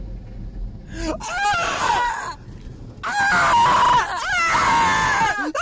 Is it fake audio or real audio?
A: real